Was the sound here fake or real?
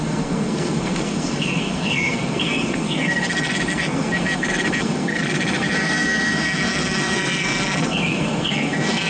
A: fake